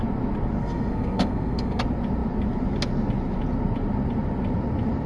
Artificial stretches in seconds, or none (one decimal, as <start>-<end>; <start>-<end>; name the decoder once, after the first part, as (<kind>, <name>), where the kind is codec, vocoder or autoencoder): 0.6-1.8 (codec, SNAC)